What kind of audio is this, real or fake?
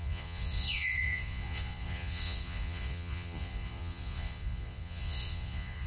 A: fake